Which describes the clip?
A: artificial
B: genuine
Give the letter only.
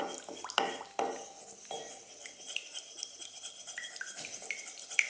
B